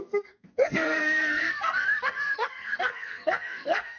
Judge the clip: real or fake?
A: fake